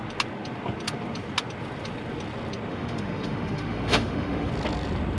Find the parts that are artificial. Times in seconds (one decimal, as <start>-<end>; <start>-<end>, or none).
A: 2.7-4.5